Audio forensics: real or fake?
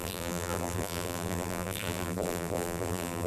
fake